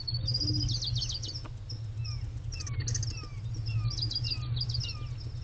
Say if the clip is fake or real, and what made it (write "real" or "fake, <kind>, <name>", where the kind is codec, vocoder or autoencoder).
real